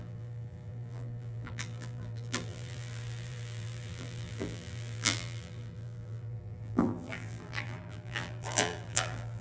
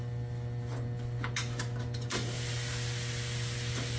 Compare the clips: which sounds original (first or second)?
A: second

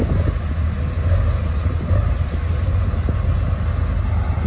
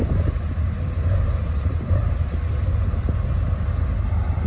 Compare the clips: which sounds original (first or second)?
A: first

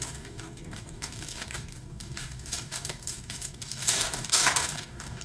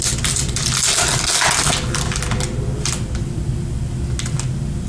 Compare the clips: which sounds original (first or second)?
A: second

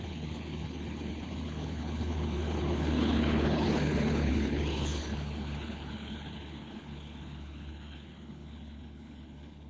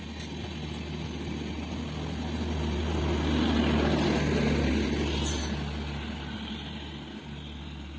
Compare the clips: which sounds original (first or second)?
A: second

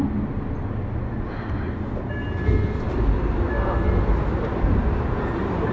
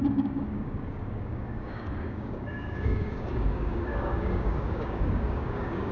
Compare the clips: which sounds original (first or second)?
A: first